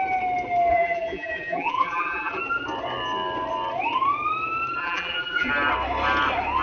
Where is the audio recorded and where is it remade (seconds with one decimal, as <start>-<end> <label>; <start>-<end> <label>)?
0.0-0.7 recorded; 0.7-2.4 remade; 2.4-4.8 recorded; 4.8-5.5 remade; 5.5-6.6 recorded